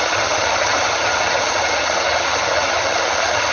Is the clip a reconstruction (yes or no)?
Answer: yes